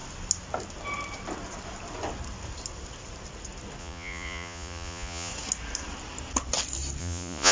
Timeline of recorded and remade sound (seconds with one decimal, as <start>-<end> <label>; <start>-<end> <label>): 0.0-3.8 recorded; 3.8-5.3 remade; 5.3-7.0 recorded; 7.0-7.5 remade